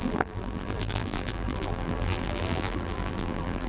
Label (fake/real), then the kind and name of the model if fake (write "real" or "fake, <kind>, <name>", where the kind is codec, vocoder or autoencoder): fake, vocoder, BigVGAN v2